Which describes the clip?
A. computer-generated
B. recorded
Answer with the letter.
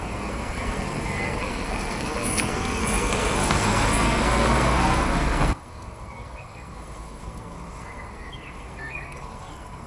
A